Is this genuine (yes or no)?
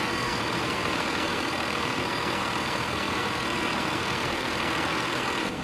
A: no